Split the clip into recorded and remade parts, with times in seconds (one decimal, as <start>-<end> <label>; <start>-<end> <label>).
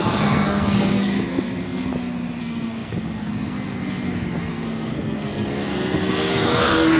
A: 0.0-1.9 remade; 1.9-2.4 recorded; 2.4-7.0 remade